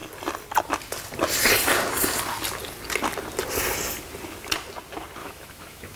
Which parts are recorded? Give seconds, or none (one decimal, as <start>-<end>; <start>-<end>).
0.0-5.2